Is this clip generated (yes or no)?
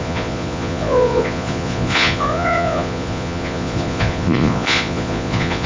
yes